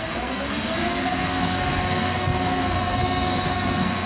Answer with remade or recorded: remade